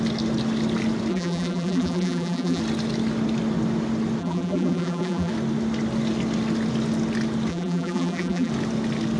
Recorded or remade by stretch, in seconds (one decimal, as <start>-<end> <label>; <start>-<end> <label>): 0.0-1.1 recorded; 1.1-2.6 remade; 2.6-4.2 recorded; 4.2-5.3 remade; 5.3-7.5 recorded; 7.5-8.5 remade; 8.5-9.2 recorded